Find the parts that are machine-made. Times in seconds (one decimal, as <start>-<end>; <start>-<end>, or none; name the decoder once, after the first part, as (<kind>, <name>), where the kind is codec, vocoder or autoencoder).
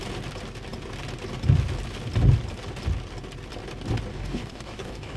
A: 4.1-5.2 (codec, DAC)